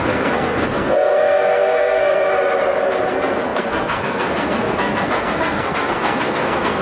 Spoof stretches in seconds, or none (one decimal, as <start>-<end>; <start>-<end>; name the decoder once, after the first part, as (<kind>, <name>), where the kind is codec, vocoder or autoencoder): 0.0-2.3 (codec, SNAC); 3.1-6.8

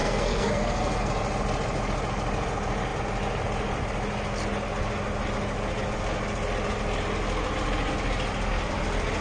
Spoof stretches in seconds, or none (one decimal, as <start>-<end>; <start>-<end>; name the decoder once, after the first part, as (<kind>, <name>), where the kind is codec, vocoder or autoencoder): 0.0-1.1 (codec, SNAC)

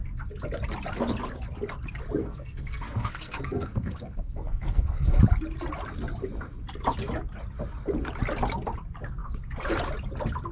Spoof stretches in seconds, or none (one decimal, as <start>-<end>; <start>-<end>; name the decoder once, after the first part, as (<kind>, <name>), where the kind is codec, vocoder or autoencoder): 2.2-5.2 (codec, SNAC)

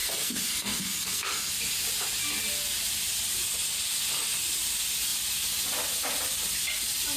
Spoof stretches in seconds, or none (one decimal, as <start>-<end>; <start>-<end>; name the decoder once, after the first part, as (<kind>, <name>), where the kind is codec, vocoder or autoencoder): 0.0-1.5 (codec, SNAC)